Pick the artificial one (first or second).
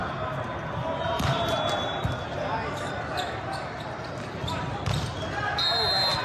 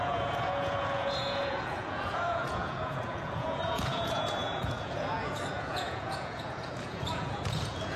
second